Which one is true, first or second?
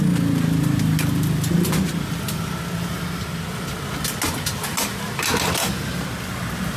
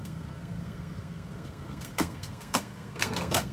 first